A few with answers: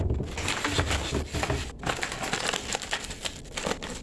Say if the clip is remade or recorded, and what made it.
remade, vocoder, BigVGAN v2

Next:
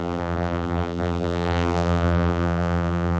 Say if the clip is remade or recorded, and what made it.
remade, vocoder, BigVGAN v2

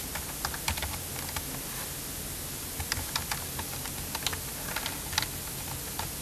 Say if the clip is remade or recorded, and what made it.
recorded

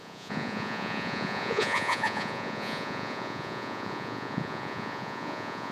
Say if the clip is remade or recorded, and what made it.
remade, vocoder, Vocos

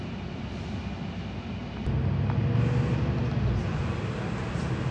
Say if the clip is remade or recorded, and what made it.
recorded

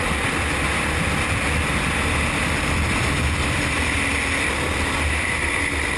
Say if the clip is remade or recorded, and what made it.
recorded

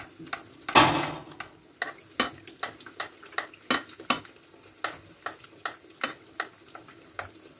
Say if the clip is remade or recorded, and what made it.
recorded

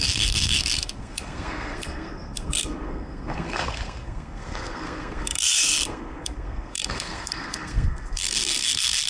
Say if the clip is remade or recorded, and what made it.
remade, codec, SNAC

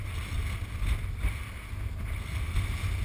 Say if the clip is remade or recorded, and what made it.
recorded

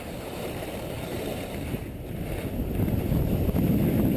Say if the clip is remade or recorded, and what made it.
recorded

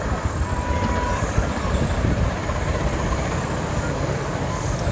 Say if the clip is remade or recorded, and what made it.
recorded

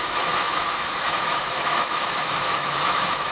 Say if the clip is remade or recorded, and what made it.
remade, autoencoder, DAC-VAE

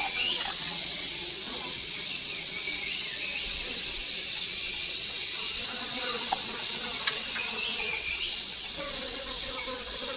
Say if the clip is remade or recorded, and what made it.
remade, vocoder, WaveNeXt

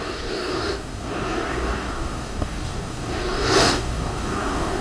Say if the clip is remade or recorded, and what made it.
remade, codec, DAC